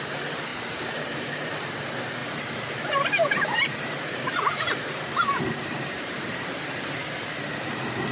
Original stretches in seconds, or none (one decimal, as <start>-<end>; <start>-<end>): 0.0-0.5; 1.8-2.2; 6.5-8.1